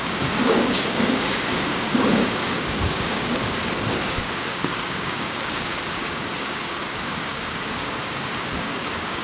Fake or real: fake